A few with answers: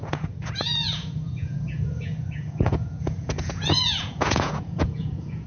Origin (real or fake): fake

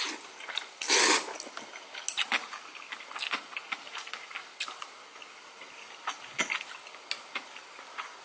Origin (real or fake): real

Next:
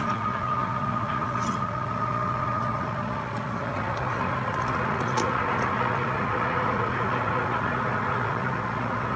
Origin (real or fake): fake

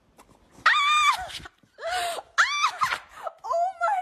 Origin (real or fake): real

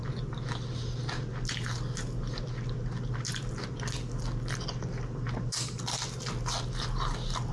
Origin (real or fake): real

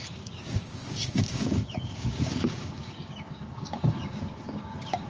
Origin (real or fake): fake